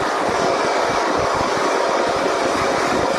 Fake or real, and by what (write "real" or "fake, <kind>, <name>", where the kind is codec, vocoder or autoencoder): fake, codec, DAC